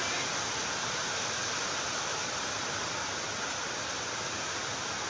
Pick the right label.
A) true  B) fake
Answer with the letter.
A